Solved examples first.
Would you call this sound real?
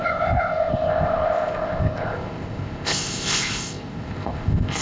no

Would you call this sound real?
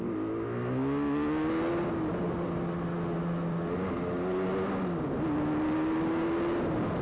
yes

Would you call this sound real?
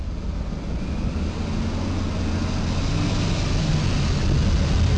yes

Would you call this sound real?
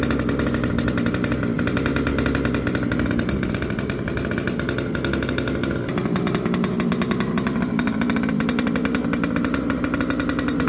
yes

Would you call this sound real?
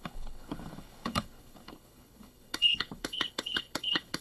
no